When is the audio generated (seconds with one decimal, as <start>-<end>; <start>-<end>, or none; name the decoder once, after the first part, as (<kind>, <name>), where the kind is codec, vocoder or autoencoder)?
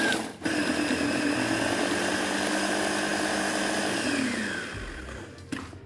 none